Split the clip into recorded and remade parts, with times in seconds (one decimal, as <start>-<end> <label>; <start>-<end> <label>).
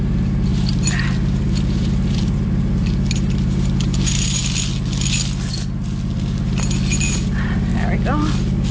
0.0-4.4 remade; 4.4-7.0 recorded; 7.0-7.7 remade; 7.7-8.7 recorded